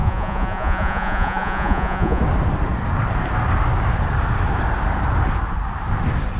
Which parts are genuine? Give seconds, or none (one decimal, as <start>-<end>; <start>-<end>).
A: 2.2-6.4